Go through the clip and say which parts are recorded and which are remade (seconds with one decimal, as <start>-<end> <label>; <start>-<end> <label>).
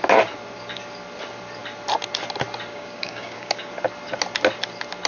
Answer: 0.0-2.7 recorded; 2.7-3.7 remade; 3.7-5.1 recorded